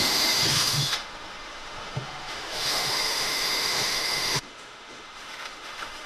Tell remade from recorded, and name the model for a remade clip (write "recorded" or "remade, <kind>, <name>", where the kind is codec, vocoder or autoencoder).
remade, autoencoder, DAC-VAE